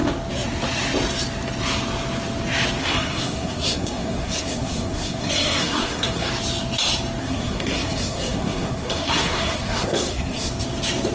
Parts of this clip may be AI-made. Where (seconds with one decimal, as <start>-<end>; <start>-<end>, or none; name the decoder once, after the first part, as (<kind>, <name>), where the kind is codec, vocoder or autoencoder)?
2.8-6.3 (codec, SNAC); 7.2-10.5